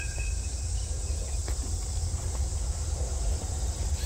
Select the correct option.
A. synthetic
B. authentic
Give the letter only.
B